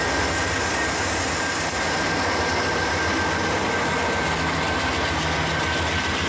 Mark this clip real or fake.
real